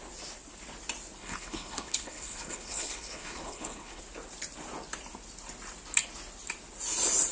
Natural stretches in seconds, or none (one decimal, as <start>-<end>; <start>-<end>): 0.0-1.2; 4.0-7.3